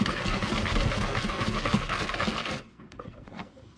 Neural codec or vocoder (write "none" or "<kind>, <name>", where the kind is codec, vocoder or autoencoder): codec, SNAC